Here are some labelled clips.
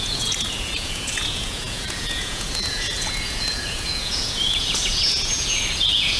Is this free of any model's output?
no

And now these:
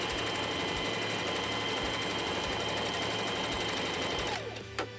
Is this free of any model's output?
yes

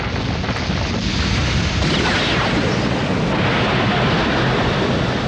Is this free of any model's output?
yes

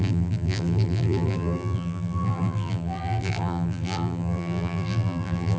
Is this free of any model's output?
no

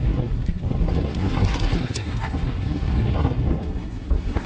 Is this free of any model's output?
no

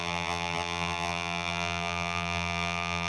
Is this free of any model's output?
no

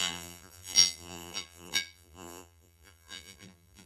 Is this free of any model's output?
no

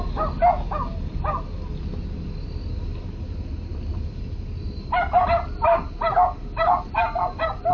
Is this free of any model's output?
yes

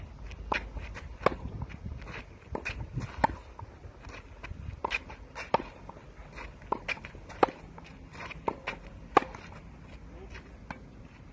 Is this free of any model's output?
yes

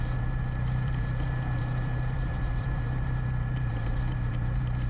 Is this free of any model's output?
no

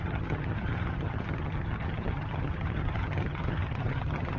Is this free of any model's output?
no